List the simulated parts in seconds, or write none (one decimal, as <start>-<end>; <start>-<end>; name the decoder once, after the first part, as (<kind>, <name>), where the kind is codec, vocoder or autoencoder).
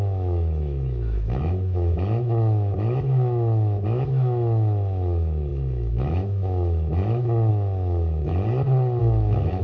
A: 0.0-8.3 (autoencoder, DAC-VAE); 9.0-9.6